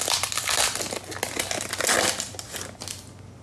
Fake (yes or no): no